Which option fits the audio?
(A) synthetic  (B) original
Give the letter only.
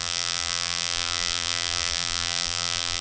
A